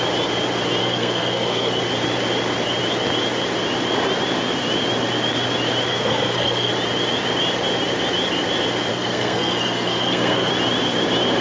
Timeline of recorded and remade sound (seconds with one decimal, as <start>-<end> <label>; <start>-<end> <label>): 0.0-0.8 recorded; 0.8-1.8 remade; 1.8-5.9 recorded; 5.9-6.7 remade; 6.7-8.9 recorded; 8.9-10.5 remade; 10.5-11.4 recorded